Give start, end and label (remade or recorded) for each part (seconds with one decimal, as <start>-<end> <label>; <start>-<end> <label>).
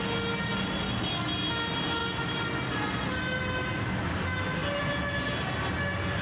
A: 0.0-6.2 recorded